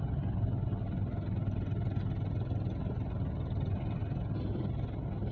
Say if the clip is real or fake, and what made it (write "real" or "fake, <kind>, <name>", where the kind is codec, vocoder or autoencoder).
real